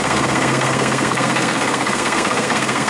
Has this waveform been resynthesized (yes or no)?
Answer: yes